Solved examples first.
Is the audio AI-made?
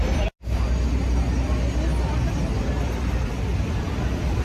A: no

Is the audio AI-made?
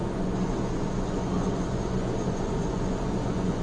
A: yes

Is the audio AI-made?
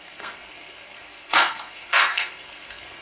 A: yes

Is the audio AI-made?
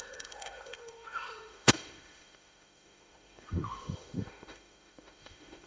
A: yes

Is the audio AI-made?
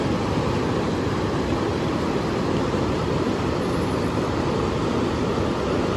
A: no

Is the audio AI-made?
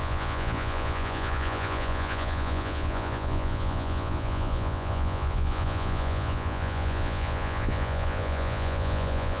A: yes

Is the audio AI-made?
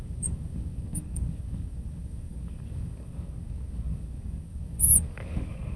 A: yes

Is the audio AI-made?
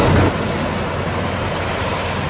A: no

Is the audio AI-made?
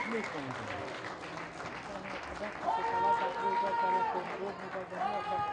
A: no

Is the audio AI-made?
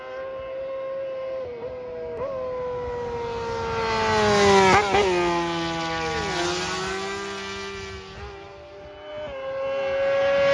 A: no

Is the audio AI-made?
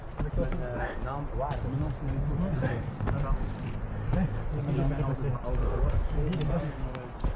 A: no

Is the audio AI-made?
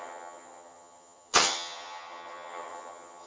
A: yes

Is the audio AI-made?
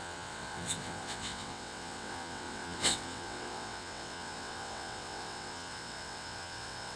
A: yes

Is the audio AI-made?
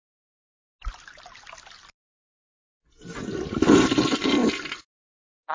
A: no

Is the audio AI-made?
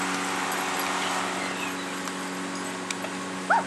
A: no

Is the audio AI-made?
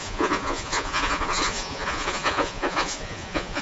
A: yes